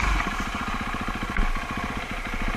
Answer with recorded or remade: remade